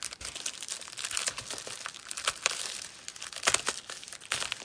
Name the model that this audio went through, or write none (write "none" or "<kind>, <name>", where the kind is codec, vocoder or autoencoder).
none